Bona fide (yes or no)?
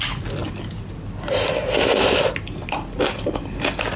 yes